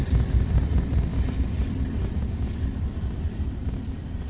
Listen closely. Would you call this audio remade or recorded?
recorded